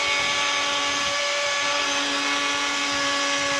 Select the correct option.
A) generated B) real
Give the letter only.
B